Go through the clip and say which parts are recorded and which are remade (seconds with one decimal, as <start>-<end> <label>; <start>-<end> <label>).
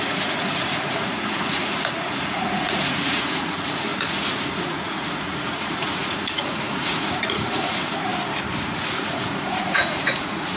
0.0-8.1 remade; 8.1-8.6 recorded; 8.6-10.6 remade